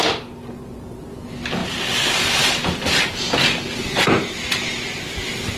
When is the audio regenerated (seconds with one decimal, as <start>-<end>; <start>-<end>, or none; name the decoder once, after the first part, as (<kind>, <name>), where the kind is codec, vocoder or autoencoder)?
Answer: 1.6-3.2 (vocoder, BigVGAN v2)